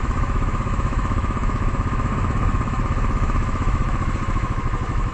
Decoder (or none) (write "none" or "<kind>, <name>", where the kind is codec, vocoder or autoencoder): autoencoder, DAC-VAE